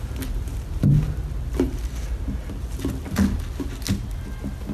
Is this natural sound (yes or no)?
yes